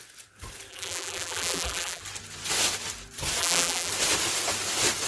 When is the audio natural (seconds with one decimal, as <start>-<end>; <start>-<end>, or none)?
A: 0.0-0.7; 2.0-3.4; 3.9-5.1

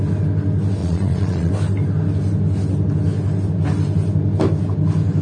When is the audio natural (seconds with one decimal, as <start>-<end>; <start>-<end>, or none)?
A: 0.0-0.8; 1.5-5.2

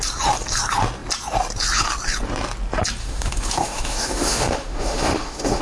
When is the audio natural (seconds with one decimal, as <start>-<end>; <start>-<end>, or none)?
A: 0.0-3.0

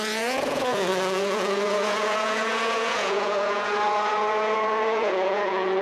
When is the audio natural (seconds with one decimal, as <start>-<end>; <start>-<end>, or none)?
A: none

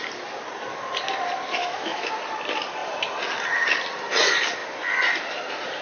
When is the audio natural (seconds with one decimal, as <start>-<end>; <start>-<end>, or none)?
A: 0.0-1.6; 2.1-5.8

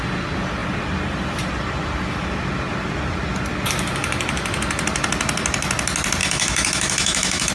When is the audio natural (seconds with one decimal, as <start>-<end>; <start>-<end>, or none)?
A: 0.0-6.2

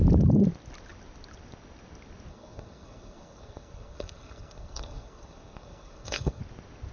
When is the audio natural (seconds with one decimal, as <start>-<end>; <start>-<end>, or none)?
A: 0.0-2.3; 6.4-6.9

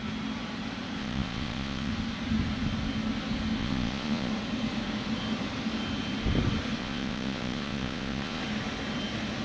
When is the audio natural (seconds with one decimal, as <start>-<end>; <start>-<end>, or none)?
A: 0.0-1.0; 1.9-3.6; 4.3-6.8; 8.4-9.4